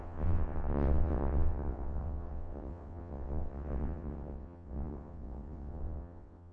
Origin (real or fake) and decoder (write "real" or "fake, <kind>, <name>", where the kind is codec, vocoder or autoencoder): fake, vocoder, WaveNeXt